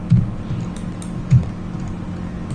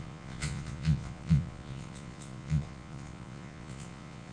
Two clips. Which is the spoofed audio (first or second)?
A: second